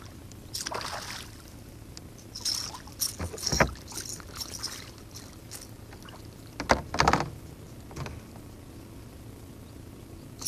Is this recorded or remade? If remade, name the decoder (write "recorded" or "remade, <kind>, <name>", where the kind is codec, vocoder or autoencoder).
recorded